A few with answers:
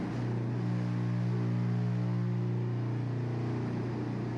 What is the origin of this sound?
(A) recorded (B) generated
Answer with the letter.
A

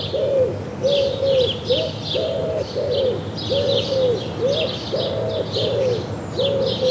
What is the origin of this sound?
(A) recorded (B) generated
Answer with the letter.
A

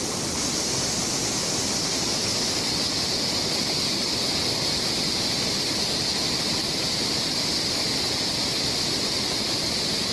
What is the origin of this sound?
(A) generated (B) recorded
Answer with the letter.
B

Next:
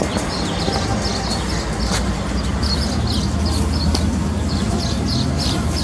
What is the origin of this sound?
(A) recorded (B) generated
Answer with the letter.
A